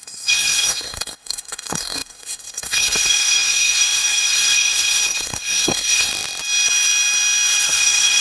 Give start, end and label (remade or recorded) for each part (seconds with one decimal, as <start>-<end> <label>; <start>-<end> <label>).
0.0-6.1 remade; 6.1-7.6 recorded; 7.6-8.2 remade